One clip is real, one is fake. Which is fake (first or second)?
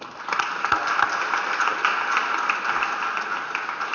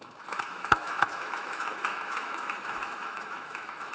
second